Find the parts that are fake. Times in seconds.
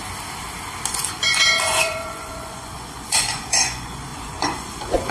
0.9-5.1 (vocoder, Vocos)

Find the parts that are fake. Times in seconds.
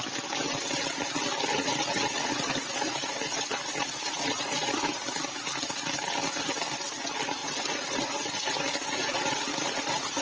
1.5-5.0 (vocoder, Vocos); 7.4-10.2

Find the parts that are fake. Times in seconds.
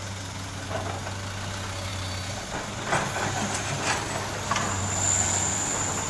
none